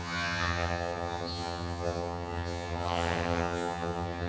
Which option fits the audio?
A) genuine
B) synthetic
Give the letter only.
B